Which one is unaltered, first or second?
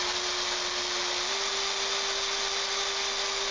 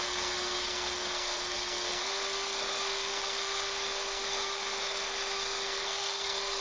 first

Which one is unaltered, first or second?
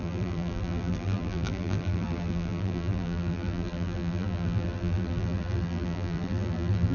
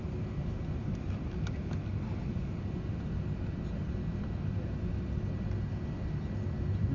second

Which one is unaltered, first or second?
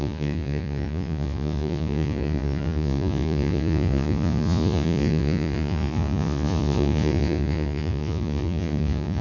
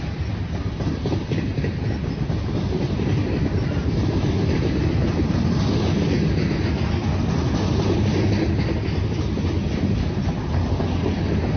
second